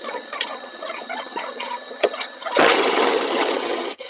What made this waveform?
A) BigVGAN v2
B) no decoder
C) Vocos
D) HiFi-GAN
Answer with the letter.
D